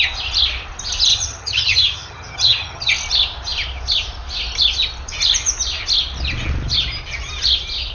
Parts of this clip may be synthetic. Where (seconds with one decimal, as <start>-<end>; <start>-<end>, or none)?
1.1-2.9